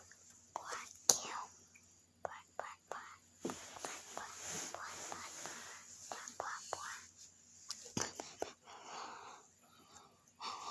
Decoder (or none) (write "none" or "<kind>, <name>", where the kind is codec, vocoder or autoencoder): none